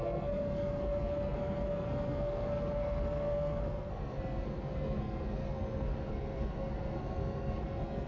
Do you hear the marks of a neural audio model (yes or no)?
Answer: yes